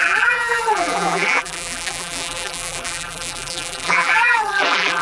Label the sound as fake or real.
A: fake